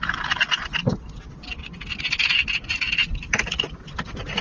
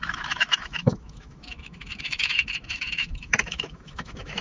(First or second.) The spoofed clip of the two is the second